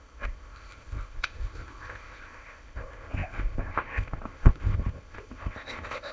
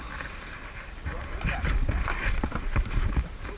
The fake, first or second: first